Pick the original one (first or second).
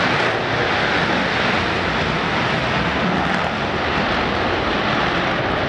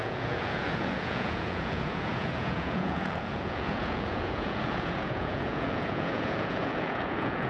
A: first